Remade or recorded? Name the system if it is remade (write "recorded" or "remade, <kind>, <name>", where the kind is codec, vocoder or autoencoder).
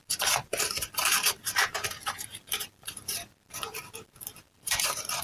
remade, vocoder, BigVGAN v2